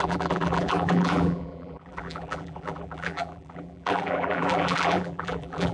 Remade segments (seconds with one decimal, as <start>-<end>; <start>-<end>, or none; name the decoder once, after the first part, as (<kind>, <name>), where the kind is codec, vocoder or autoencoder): 0.0-5.7 (vocoder, BigVGAN v2)